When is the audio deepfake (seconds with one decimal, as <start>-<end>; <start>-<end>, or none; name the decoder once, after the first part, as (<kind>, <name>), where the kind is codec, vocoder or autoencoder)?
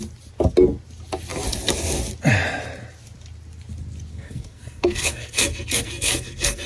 4.1-6.7 (codec, SNAC)